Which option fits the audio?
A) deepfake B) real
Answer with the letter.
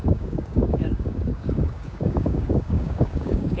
A